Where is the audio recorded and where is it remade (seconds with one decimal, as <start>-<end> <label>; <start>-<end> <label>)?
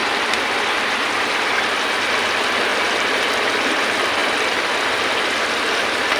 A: 0.0-4.2 remade; 4.2-5.2 recorded; 5.2-6.2 remade